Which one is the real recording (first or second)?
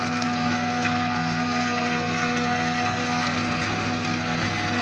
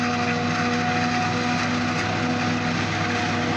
second